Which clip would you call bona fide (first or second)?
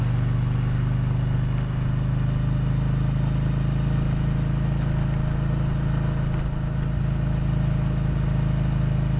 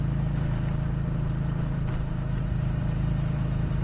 first